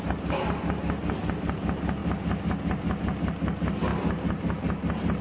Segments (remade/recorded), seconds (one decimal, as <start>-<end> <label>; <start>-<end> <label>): 0.0-5.2 recorded